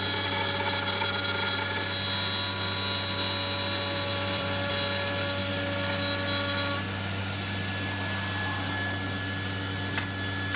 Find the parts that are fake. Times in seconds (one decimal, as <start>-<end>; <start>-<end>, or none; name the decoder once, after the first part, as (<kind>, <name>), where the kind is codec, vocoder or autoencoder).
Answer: 4.1-4.7 (vocoder, BigVGAN v2)